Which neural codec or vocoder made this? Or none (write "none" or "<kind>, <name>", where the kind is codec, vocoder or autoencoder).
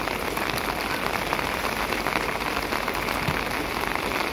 none